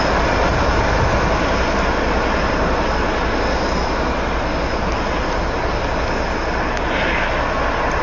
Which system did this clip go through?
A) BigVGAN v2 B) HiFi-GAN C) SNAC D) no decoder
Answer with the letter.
D